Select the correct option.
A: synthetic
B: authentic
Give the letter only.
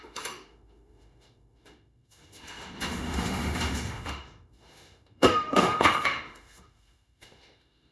A